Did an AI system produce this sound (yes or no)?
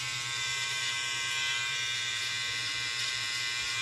yes